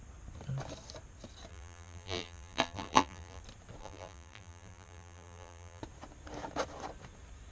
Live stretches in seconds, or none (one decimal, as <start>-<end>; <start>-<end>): 0.0-1.5; 3.4-3.8; 5.8-7.5